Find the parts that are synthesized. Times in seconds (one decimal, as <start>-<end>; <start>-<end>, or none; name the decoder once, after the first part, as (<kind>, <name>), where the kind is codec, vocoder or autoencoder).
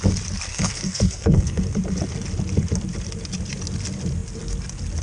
0.5-1.6 (codec, SNAC)